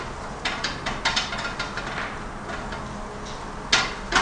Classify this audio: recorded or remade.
recorded